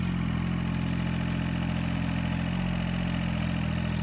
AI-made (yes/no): no